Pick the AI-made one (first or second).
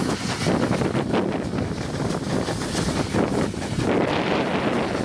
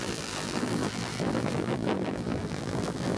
second